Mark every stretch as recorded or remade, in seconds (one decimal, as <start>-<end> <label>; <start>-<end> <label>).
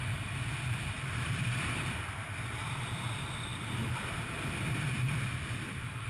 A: 0.0-6.1 remade